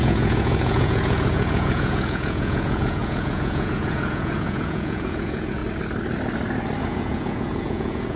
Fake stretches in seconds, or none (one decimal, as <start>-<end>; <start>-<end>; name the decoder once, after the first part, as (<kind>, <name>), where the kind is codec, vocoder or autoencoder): 0.0-5.6 (vocoder, Vocos); 6.8-8.2